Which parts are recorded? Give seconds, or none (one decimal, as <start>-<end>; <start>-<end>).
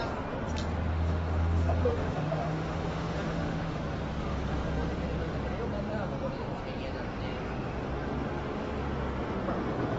0.0-0.9; 3.8-10.0